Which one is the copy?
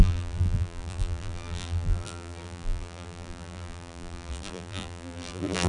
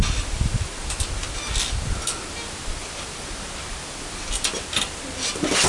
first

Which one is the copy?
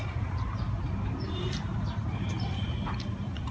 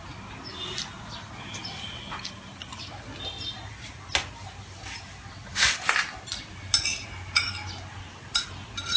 first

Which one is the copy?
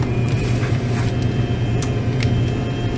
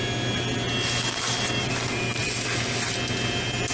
first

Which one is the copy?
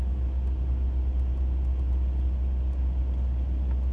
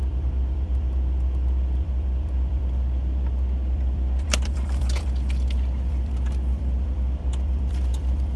second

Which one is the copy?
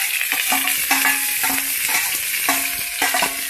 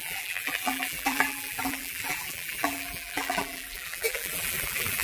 second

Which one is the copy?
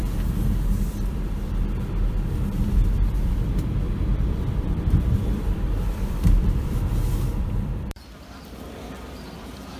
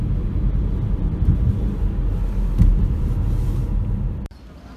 first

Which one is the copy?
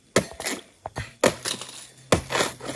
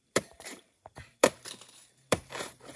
second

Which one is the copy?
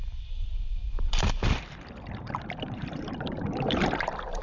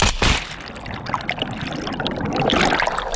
first